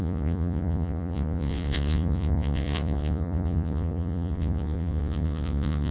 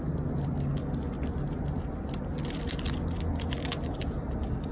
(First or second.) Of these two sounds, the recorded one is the second